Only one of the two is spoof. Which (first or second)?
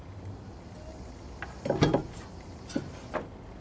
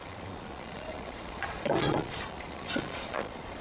second